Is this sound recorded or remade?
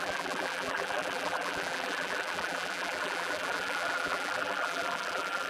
remade